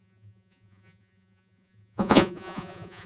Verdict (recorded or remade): remade